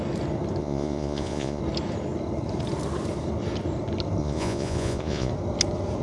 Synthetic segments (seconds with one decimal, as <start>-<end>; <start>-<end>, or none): 0.6-1.6; 4.2-5.3